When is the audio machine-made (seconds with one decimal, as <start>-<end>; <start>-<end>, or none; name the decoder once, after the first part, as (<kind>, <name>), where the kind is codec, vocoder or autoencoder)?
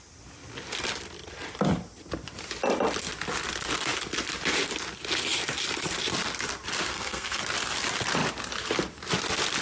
6.9-7.4 (codec, SNAC)